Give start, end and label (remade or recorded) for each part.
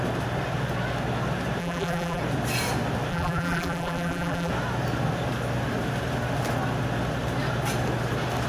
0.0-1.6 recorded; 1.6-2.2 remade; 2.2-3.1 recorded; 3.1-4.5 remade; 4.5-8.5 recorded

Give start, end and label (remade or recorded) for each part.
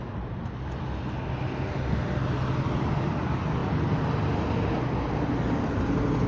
0.0-6.3 recorded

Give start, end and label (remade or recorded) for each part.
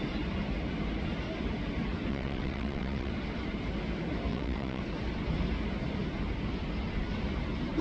0.0-2.1 recorded; 2.1-3.1 remade; 3.1-4.3 recorded; 4.3-4.8 remade; 4.8-7.8 recorded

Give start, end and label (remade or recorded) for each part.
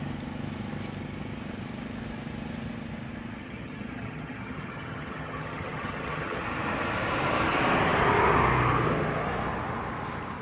0.0-3.4 recorded; 3.4-6.4 remade; 6.4-10.4 recorded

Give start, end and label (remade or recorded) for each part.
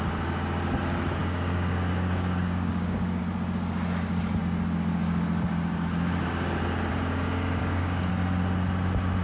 0.0-1.2 recorded; 1.2-3.2 remade; 3.2-7.6 recorded; 7.6-8.1 remade; 8.1-9.2 recorded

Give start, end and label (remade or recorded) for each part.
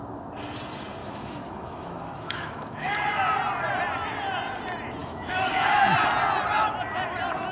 0.0-1.0 recorded; 1.0-3.0 remade; 3.0-5.0 recorded; 5.0-5.8 remade; 5.8-7.5 recorded